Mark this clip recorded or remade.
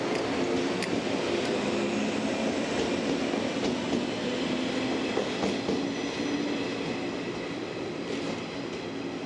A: recorded